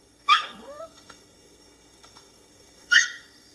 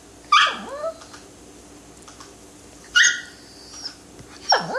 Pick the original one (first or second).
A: second